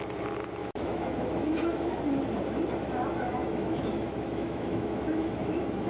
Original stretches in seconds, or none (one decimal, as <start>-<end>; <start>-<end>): 0.0-0.6; 2.0-3.4